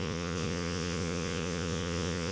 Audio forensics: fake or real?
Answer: fake